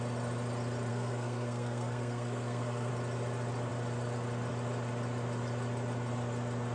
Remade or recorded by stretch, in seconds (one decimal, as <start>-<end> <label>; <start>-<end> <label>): 0.0-0.9 recorded; 0.9-2.9 remade; 2.9-6.7 recorded